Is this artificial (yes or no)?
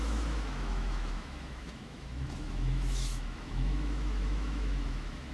yes